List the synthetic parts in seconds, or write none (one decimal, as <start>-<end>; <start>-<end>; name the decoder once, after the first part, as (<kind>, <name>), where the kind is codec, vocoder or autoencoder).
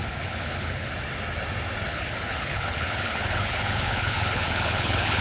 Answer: 0.0-0.9 (codec, HILCodec); 1.9-5.2